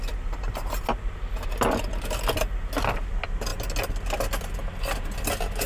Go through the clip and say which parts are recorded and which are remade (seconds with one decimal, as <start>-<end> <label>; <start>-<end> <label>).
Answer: 0.0-5.7 recorded